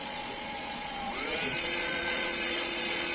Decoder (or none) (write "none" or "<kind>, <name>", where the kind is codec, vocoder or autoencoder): vocoder, Vocos